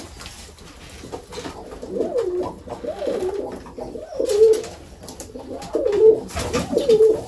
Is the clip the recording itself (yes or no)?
yes